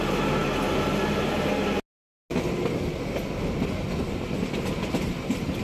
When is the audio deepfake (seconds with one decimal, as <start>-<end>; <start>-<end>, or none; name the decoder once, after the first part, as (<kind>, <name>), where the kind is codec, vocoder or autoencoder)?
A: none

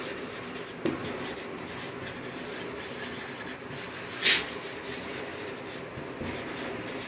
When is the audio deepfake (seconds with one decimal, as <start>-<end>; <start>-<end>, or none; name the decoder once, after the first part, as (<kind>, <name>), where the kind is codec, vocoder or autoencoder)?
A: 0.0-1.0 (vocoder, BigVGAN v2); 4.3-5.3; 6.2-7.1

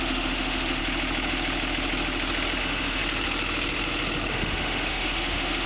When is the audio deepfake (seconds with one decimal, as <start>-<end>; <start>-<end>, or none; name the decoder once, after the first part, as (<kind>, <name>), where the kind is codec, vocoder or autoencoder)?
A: 0.0-0.8 (autoencoder, DAC-VAE); 2.6-3.0; 4.3-5.7

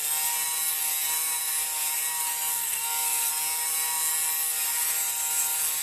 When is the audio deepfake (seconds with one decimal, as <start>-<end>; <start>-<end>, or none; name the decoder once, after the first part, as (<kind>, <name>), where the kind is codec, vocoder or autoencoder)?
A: 2.5-3.3 (codec, SNAC)

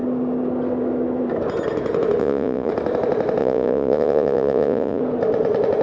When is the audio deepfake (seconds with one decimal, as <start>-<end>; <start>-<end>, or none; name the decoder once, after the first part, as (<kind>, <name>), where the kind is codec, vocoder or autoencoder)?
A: 2.2-2.7 (vocoder, Vocos); 3.4-5.0